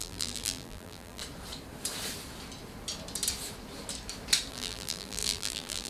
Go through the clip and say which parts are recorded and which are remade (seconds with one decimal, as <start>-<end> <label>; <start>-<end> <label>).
0.0-1.2 remade; 1.2-4.5 recorded; 4.5-5.9 remade